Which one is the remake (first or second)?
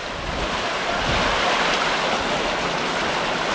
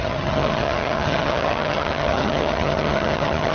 second